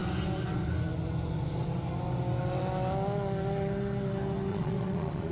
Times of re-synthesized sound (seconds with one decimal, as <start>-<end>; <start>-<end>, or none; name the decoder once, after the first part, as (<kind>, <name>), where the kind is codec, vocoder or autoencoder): 4.5-5.3 (vocoder, Vocos)